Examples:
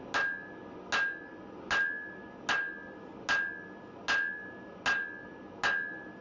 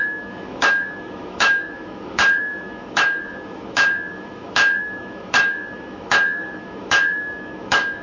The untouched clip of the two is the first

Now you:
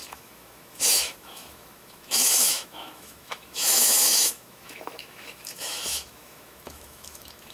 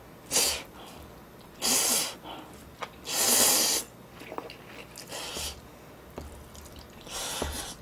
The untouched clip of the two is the second